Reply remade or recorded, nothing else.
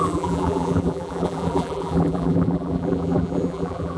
remade